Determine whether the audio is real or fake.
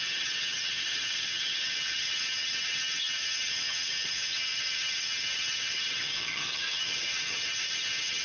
fake